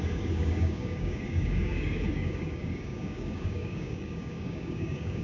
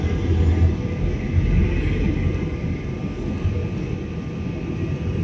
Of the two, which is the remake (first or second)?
first